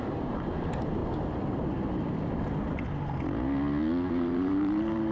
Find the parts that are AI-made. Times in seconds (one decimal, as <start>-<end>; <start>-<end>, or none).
0.0-1.0; 4.1-5.1